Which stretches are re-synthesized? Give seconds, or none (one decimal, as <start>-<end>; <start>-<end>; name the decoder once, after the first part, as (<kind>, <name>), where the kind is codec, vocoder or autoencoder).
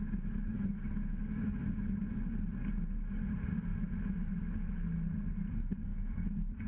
0.5-1.8 (autoencoder, DAC-VAE); 3.7-4.3; 5.9-6.7